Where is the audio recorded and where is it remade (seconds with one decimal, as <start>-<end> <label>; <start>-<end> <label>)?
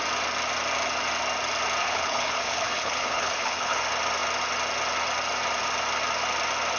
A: 0.0-1.8 recorded; 1.8-3.8 remade; 3.8-6.8 recorded